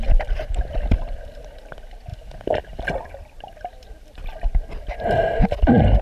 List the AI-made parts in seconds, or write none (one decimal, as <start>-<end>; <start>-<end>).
none